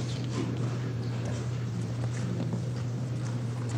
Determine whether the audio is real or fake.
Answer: fake